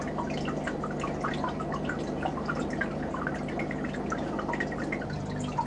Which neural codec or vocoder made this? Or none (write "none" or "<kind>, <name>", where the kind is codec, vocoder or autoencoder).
none